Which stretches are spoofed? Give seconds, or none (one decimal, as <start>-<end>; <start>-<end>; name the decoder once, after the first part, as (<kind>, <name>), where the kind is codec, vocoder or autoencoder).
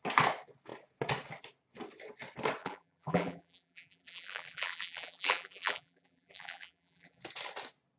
2.6-7.2 (vocoder, BigVGAN v2)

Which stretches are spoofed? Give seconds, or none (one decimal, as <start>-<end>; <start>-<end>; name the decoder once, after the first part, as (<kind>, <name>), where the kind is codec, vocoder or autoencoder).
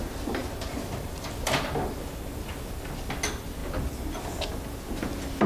0.4-2.4 (vocoder, BigVGAN v2)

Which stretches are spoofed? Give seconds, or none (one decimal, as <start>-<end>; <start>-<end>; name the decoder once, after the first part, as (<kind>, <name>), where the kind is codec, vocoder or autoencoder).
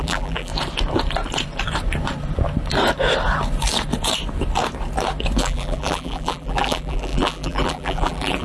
0.0-0.5 (vocoder, BigVGAN v2); 5.4-8.4